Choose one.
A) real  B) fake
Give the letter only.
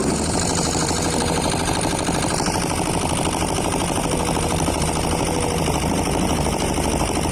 B